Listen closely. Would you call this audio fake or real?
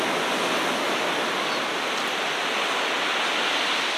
real